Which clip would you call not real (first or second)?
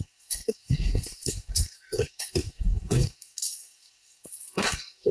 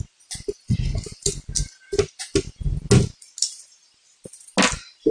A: first